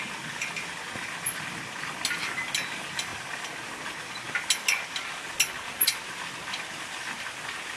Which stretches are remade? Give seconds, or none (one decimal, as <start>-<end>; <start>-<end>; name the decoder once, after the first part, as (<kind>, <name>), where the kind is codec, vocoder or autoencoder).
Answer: none